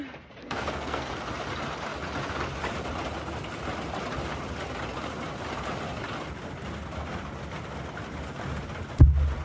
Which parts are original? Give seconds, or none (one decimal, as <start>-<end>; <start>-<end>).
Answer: 0.0-0.4; 1.1-9.4